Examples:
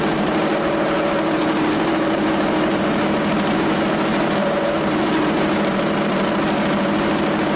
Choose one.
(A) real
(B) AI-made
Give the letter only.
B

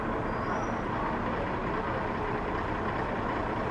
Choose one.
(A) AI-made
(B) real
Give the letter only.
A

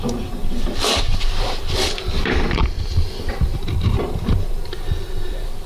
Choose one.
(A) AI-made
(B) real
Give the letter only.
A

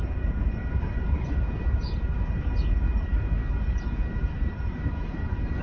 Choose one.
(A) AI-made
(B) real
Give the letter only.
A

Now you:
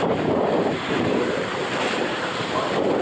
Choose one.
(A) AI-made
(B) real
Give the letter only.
A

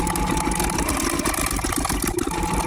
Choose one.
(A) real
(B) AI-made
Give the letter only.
A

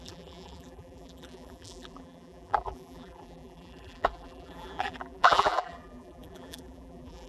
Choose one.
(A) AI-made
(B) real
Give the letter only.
A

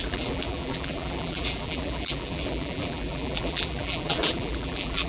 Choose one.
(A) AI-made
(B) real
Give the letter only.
A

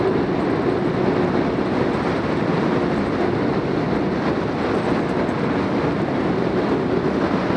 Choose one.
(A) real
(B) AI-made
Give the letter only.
A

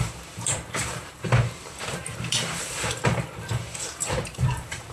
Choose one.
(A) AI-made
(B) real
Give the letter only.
A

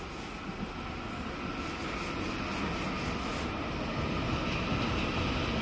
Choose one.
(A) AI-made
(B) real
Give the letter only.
B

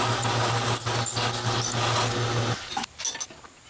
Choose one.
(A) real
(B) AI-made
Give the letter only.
A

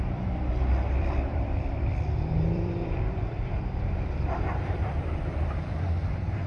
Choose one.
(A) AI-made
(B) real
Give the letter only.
A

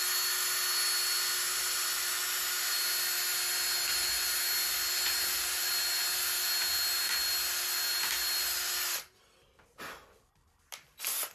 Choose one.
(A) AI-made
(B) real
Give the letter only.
B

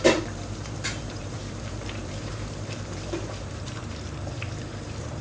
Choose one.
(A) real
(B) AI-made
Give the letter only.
B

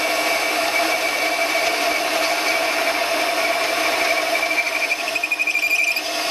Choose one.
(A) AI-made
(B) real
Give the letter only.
A